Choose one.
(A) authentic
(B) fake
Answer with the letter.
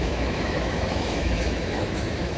B